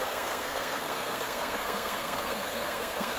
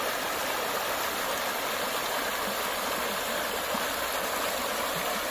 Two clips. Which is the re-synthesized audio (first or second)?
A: first